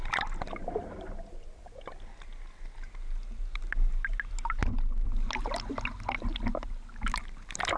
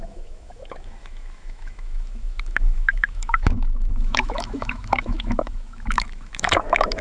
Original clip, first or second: first